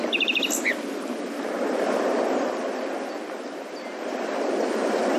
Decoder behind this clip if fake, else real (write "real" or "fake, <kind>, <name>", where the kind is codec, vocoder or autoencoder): real